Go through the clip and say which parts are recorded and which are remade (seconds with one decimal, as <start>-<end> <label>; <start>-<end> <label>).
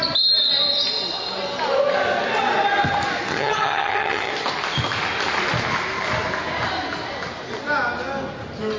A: 0.0-3.3 recorded; 3.3-4.3 remade; 4.3-8.8 recorded